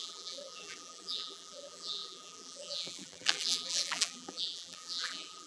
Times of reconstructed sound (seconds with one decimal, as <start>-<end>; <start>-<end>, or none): 0.0-5.5